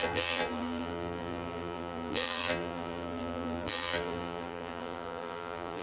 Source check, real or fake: fake